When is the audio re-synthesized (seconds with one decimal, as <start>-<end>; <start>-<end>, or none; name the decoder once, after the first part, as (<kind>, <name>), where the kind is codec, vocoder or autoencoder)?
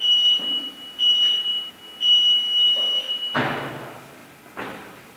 none